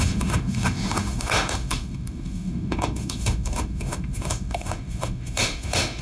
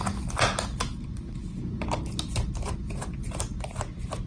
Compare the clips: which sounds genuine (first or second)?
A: second